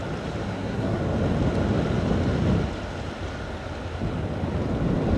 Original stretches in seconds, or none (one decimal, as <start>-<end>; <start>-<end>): 0.0-0.4; 1.0-5.2